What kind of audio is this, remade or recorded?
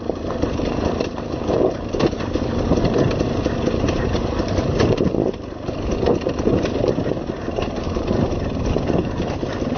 remade